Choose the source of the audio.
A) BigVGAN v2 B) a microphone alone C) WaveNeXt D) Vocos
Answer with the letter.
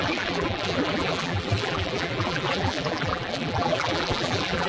A